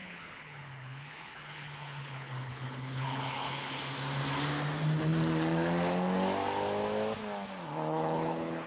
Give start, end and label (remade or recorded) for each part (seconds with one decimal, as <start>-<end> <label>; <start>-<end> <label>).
0.0-3.8 remade; 3.8-7.9 recorded; 7.9-8.7 remade